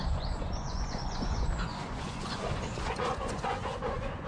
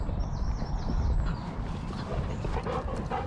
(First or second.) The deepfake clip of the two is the first